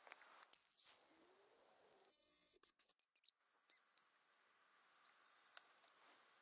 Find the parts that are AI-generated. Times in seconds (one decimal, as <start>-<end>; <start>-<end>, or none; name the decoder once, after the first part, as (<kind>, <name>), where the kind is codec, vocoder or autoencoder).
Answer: 2.1-2.9 (autoencoder, DAC-VAE)